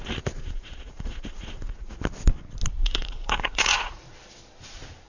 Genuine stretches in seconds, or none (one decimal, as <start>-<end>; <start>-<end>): 0.0-0.4; 1.9-2.8; 4.0-5.1